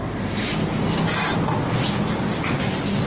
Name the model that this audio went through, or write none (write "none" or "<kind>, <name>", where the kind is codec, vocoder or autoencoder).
none